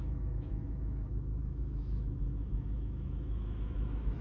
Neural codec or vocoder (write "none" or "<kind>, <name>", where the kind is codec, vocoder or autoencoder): autoencoder, DAC-VAE